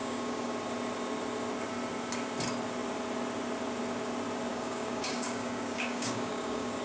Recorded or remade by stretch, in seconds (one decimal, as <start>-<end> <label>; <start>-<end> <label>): 0.0-0.5 remade; 0.5-4.5 recorded; 4.5-6.8 remade

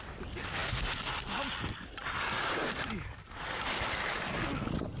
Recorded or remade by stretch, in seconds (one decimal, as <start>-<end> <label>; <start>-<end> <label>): 0.0-5.0 recorded

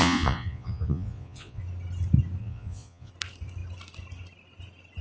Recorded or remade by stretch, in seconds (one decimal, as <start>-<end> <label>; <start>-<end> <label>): 0.0-1.6 remade; 1.6-2.4 recorded; 2.4-3.1 remade; 3.1-5.0 recorded

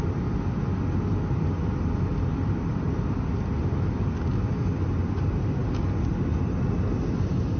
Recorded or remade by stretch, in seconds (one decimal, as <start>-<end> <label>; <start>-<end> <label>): 0.0-7.6 recorded

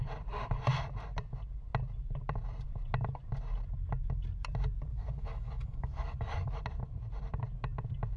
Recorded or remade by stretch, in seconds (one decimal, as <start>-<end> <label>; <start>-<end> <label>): 0.0-4.9 recorded; 4.9-6.6 remade; 6.6-8.2 recorded

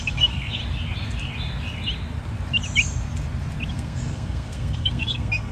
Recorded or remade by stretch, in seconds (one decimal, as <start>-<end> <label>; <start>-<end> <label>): 0.0-0.6 remade; 0.6-3.7 recorded; 3.7-5.5 remade

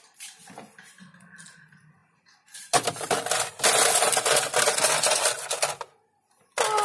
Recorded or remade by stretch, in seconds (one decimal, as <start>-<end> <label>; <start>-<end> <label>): 0.0-2.0 recorded; 2.0-5.5 remade; 5.5-6.8 recorded